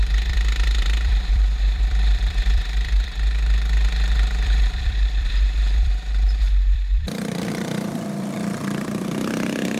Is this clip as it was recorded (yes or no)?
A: no